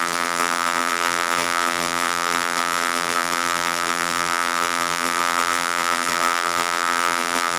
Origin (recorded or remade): remade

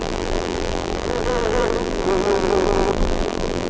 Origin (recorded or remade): remade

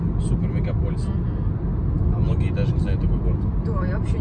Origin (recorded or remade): recorded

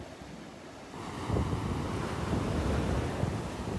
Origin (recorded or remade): recorded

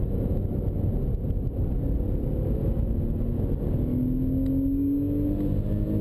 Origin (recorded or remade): recorded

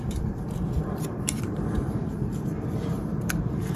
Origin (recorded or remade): remade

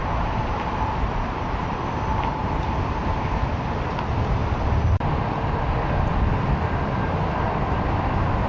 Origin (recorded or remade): remade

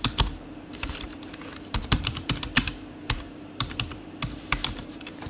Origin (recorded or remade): remade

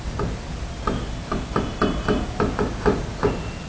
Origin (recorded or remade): recorded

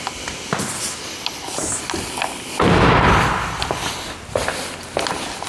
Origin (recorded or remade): recorded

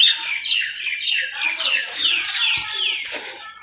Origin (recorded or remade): remade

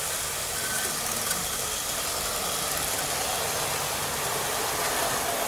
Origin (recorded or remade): recorded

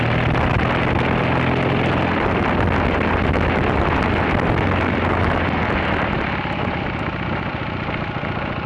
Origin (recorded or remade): recorded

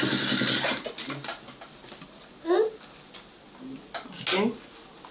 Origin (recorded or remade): recorded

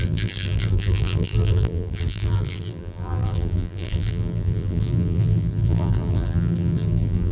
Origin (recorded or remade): remade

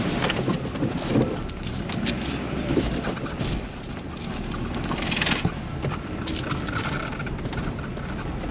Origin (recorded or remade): remade